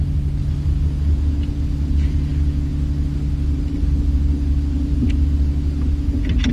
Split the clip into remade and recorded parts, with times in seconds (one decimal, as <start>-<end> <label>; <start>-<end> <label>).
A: 0.0-6.5 recorded